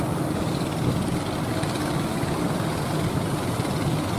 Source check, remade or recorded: recorded